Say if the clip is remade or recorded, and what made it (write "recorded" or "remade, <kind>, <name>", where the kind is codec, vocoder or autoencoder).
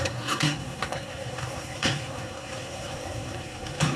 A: remade, codec, SNAC